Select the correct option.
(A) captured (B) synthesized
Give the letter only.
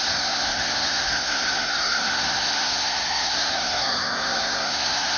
B